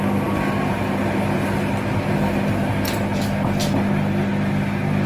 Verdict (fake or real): real